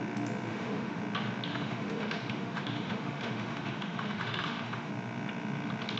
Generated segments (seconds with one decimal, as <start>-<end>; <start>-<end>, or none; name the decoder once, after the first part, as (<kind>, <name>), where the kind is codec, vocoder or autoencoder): 0.5-1.0 (autoencoder, DAC-VAE); 1.5-4.9